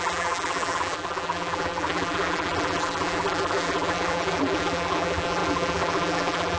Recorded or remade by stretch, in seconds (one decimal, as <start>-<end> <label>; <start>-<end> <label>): 0.0-6.6 remade